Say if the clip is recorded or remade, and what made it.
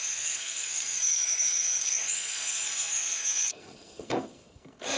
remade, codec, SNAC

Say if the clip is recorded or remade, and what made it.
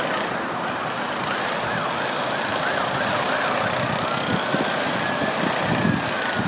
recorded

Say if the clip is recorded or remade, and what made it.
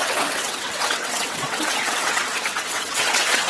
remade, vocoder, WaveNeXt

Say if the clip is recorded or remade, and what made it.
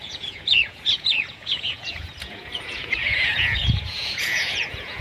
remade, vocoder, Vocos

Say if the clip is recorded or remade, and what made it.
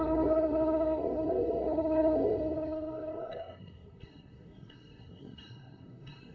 remade, codec, SNAC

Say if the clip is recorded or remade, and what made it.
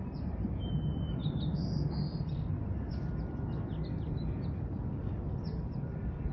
recorded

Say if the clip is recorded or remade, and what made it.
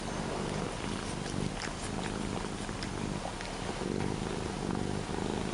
recorded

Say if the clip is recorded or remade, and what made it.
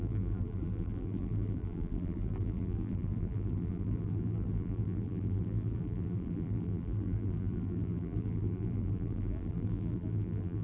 remade, vocoder, BigVGAN v2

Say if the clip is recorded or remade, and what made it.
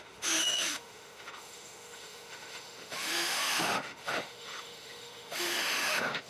remade, autoencoder, DAC-VAE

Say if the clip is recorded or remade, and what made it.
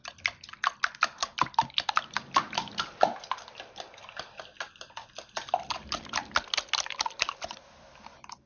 recorded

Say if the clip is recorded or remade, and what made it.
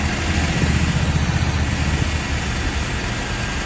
recorded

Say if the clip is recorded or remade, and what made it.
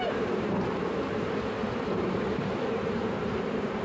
remade, vocoder, BigVGAN v2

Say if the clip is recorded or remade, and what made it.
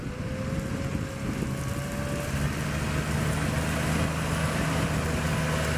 recorded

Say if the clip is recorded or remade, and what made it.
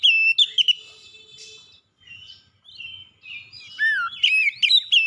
recorded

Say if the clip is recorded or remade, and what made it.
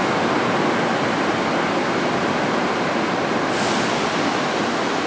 recorded